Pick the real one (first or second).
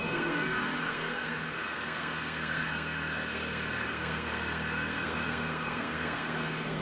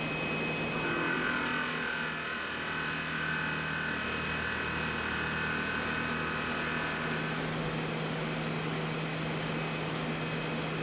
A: second